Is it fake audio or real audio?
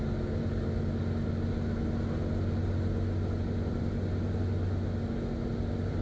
real